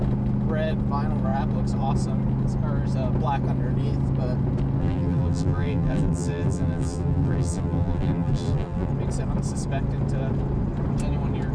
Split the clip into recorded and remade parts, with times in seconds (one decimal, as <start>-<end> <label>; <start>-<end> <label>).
0.0-4.8 recorded; 4.8-8.9 remade; 8.9-11.5 recorded